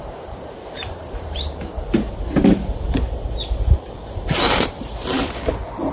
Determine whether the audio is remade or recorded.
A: remade